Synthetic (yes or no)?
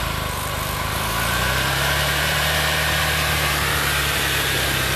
yes